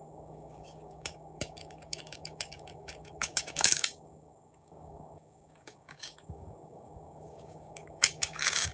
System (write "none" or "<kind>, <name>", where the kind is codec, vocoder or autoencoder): codec, DAC